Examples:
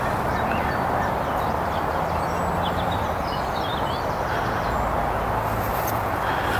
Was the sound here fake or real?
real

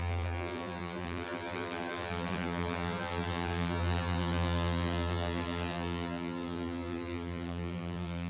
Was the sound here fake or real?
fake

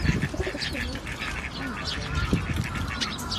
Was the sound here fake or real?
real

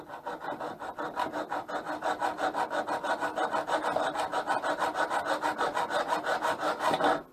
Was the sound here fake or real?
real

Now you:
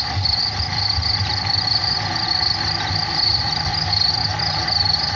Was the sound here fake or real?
real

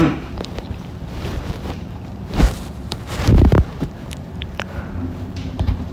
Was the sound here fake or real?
fake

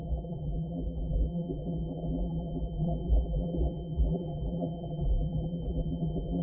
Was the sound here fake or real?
fake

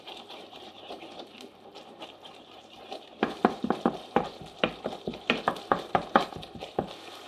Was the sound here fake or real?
fake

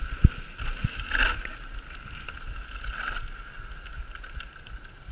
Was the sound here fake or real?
real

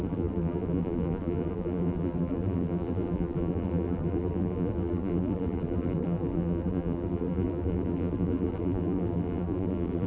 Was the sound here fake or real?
fake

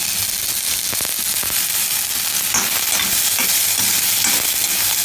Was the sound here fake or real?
real